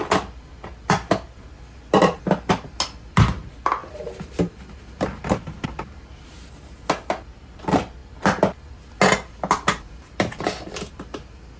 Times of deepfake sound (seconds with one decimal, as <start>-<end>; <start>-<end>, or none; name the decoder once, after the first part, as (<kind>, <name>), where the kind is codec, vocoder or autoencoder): none